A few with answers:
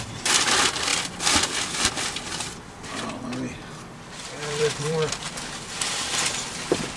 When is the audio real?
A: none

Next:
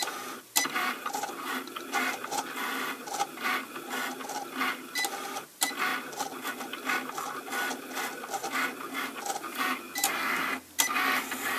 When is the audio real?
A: 0.0-0.8; 1.5-11.6

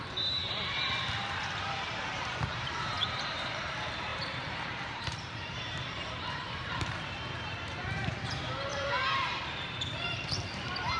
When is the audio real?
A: none

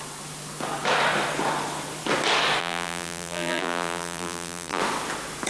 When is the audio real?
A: 0.0-2.6; 4.8-5.5

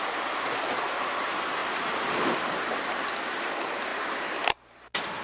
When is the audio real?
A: 0.0-3.9; 4.4-5.2

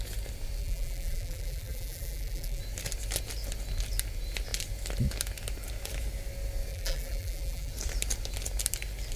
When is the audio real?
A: 0.0-0.6; 2.6-6.7; 7.7-9.2